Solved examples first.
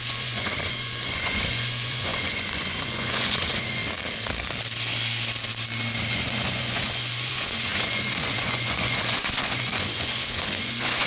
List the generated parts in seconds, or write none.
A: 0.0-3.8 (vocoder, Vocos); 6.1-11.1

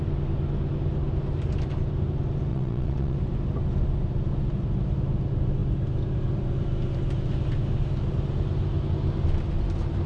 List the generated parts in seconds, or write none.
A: 2.5-3.2 (vocoder, WaveNeXt)

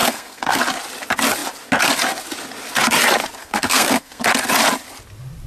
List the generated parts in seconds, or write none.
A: 0.0-0.6 (codec, SNAC); 3.4-4.2

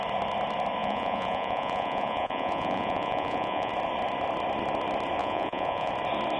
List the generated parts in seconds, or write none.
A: 0.8-3.7 (vocoder, Vocos); 5.2-5.9

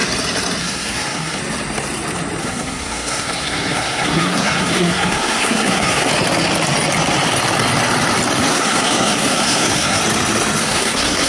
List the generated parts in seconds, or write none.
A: 0.6-1.4 (codec, SNAC); 2.4-6.1; 8.5-10.0; 10.6-11.3